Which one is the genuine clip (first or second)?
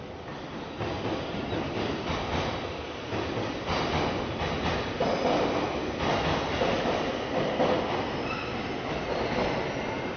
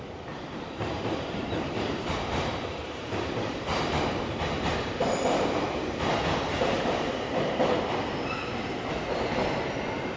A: first